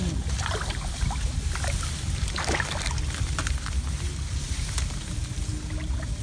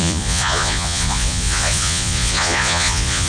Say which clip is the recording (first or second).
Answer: first